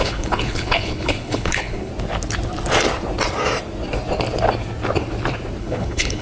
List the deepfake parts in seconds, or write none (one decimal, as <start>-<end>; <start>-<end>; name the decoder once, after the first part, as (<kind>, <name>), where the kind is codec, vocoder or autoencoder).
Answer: 0.0-1.9 (codec, HILCodec); 5.6-6.2